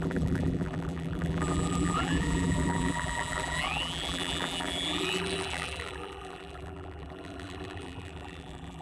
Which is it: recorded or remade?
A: remade